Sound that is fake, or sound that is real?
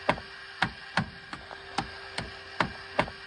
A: real